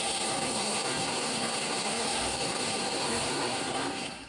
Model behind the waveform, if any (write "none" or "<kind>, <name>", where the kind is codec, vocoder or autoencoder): codec, SNAC